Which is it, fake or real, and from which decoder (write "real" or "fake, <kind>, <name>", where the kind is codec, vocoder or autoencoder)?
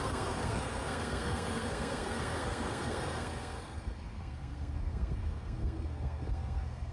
fake, codec, SNAC